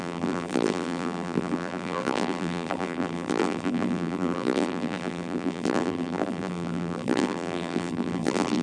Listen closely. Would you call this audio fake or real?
fake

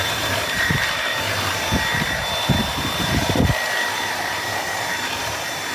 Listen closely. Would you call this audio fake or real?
fake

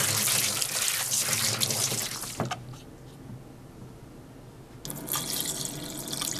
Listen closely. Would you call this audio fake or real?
real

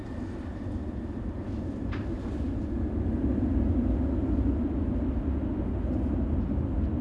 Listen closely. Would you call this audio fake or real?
real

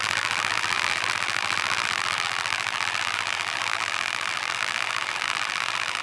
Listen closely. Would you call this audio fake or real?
fake